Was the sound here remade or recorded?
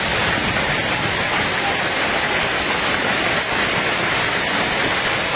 recorded